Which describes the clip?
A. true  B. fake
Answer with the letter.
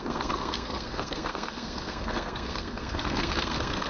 B